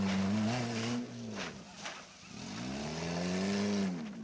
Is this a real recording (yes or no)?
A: yes